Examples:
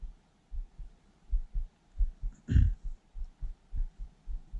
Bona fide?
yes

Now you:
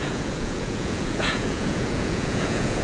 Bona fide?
no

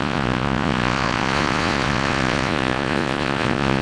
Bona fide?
no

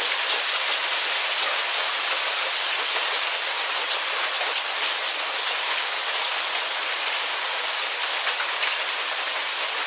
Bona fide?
yes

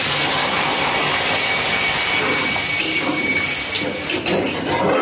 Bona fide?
yes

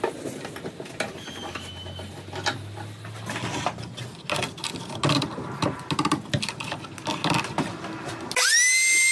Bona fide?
yes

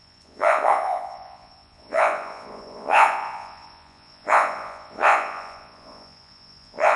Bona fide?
no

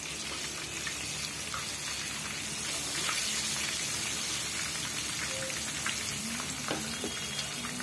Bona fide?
yes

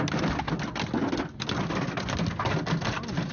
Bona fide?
yes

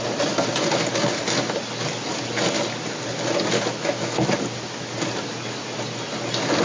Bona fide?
yes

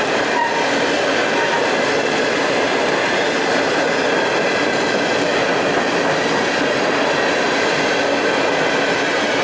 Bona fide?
yes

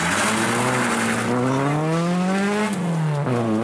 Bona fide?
yes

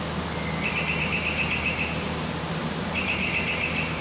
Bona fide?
yes